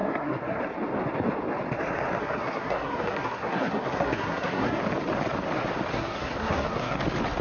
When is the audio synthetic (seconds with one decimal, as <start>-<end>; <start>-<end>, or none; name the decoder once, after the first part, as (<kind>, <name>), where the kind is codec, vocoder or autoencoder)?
0.0-0.6 (codec, SNAC); 2.2-4.8; 5.9-7.0